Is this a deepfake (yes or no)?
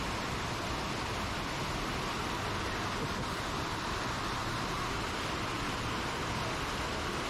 no